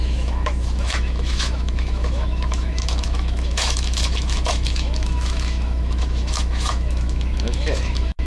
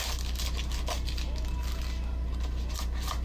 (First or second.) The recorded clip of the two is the second